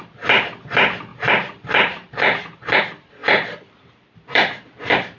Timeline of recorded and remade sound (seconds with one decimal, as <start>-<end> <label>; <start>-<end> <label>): 0.0-1.1 recorded; 1.1-2.8 remade; 2.8-3.2 recorded; 3.2-5.2 remade

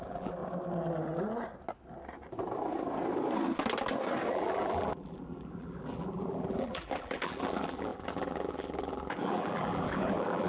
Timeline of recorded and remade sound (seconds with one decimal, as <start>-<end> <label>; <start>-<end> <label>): 0.0-0.4 remade; 0.4-4.3 recorded; 4.3-10.5 remade